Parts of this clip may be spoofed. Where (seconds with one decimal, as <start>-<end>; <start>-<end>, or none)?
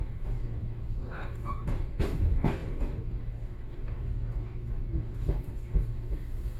0.0-6.6